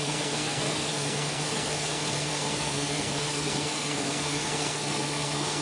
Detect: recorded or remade remade